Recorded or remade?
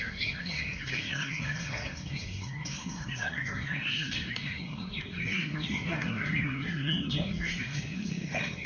remade